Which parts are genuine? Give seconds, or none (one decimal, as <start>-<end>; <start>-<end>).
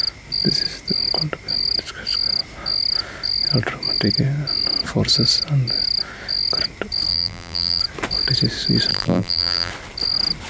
0.0-7.1; 7.8-8.9; 9.7-10.5